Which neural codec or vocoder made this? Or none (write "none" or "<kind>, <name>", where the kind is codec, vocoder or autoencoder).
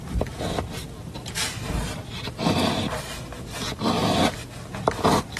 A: vocoder, BigVGAN v2